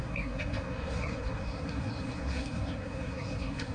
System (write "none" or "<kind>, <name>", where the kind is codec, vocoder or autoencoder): codec, SNAC